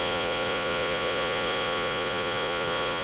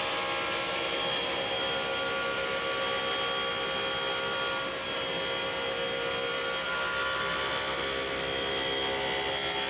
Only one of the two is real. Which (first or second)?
second